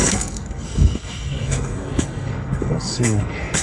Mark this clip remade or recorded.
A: remade